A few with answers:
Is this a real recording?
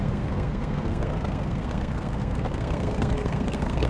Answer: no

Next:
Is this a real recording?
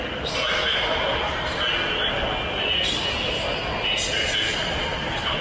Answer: yes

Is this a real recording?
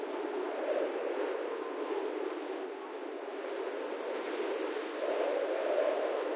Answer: yes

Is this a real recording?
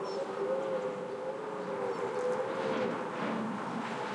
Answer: yes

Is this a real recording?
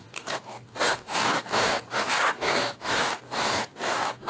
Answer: no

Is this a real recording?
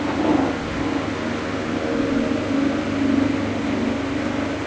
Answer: yes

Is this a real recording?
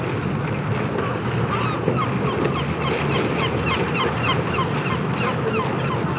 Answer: yes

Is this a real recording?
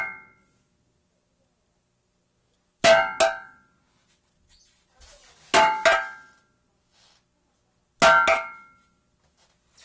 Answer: yes